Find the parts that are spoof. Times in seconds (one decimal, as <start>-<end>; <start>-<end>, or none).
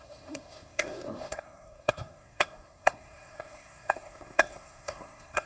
0.0-5.5